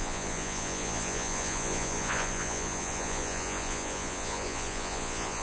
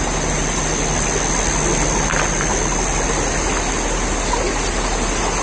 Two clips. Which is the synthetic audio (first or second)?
first